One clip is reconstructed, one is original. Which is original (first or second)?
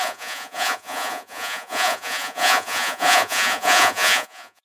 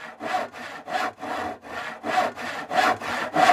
second